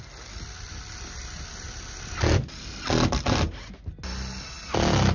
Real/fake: real